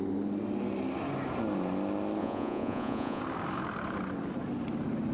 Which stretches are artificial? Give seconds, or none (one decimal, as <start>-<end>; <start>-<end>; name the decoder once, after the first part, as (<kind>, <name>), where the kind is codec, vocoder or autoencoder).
2.2-3.2 (vocoder, Vocos)